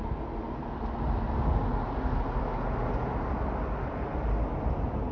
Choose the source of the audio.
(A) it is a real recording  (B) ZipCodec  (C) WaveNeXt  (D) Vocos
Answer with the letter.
A